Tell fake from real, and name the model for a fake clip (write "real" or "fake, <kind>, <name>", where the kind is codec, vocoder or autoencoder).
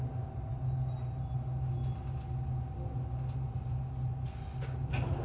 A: real